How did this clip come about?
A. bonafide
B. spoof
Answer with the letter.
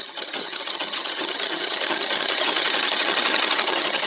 B